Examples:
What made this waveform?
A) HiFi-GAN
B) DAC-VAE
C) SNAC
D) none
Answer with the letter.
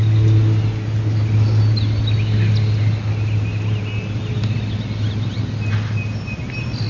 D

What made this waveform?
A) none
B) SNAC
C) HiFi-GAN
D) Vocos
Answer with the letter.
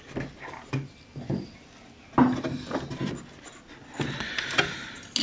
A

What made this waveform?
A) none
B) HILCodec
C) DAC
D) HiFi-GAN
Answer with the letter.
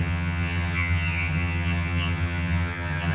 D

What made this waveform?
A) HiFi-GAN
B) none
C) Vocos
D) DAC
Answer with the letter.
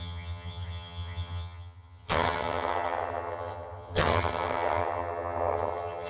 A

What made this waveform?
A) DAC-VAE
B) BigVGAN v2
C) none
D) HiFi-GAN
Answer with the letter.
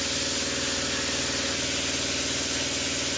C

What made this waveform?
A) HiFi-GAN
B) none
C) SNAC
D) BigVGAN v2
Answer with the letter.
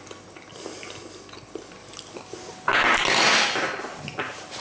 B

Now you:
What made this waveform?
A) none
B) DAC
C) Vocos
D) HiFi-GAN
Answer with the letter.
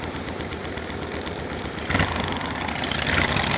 A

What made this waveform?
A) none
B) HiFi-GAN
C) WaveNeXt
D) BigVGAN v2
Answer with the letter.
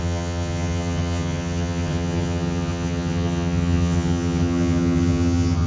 B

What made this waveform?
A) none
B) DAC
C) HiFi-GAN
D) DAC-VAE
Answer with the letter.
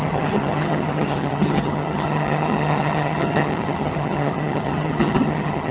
C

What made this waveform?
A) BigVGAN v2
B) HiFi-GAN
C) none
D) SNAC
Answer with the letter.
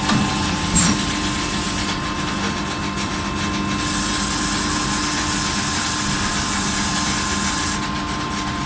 C